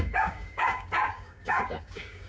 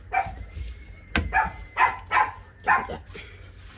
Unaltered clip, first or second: second